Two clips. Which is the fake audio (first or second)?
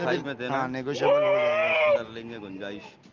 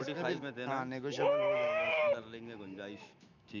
second